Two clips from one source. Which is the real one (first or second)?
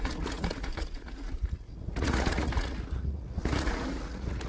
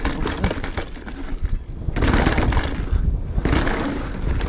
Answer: second